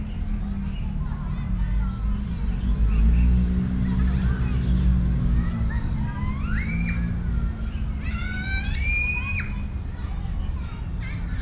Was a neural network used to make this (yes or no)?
no